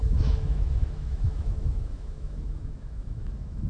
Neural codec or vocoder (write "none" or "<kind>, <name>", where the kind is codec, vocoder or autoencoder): autoencoder, DAC-VAE